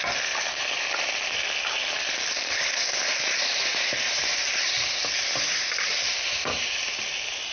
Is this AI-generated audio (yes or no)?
yes